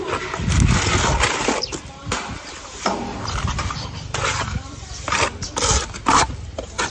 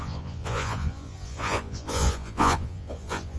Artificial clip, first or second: second